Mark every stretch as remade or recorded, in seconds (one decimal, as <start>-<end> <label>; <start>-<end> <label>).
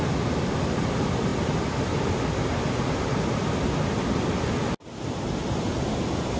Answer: 0.0-6.4 recorded